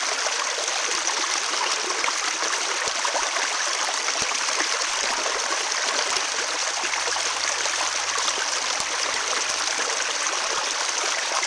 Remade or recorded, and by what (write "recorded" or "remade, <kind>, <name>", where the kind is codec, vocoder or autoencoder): recorded